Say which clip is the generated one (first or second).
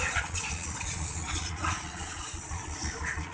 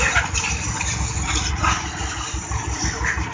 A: first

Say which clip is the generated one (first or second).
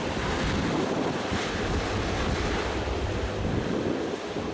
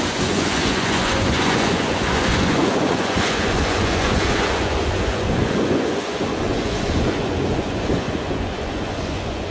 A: second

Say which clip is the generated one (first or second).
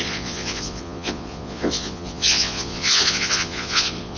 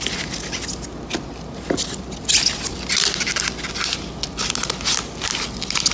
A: first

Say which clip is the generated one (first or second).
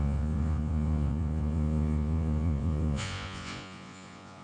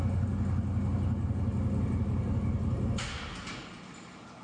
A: first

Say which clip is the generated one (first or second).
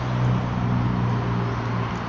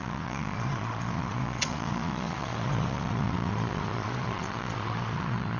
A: second